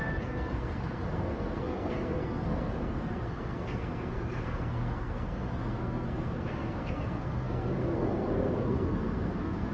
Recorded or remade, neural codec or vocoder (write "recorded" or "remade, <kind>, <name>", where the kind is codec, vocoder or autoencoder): remade, codec, SNAC